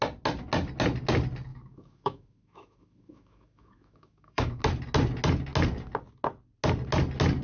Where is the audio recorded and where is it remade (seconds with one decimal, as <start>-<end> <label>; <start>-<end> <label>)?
0.0-1.5 recorded; 1.5-4.6 remade; 4.6-7.4 recorded